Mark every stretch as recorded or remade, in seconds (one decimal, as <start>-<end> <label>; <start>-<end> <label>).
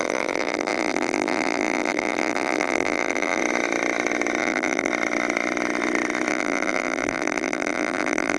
0.0-3.4 remade; 3.4-4.4 recorded; 4.4-4.9 remade; 4.9-6.3 recorded; 6.3-8.4 remade